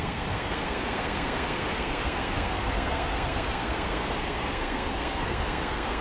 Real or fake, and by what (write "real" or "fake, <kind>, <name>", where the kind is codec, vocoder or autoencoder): fake, codec, SNAC